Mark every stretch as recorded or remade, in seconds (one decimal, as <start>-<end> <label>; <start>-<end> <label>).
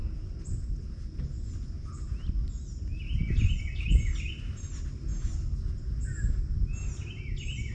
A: 0.0-7.7 recorded